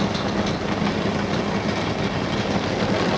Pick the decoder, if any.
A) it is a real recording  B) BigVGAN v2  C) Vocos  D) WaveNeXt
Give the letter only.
A